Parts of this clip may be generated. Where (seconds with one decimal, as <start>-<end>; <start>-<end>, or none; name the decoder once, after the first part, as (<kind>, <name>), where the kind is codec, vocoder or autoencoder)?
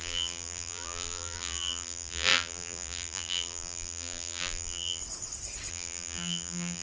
0.0-5.0 (vocoder, BigVGAN v2); 5.7-6.8